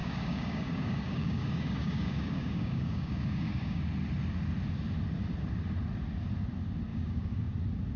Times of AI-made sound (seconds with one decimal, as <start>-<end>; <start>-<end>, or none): 0.0-3.8; 6.9-7.5